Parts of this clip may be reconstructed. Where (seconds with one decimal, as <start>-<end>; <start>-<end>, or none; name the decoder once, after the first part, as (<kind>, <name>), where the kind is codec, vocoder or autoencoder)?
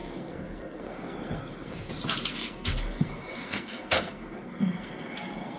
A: 0.0-1.9 (codec, SNAC); 2.3-5.6